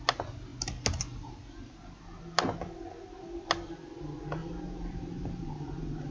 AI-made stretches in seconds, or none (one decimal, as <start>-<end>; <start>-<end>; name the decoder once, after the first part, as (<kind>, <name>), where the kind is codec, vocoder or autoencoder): 4.4-6.1 (vocoder, BigVGAN v2)